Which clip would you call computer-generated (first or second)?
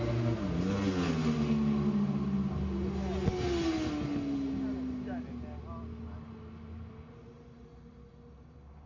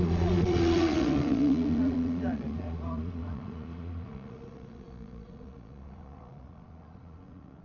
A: second